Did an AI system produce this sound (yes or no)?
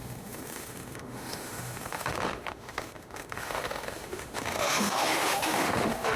yes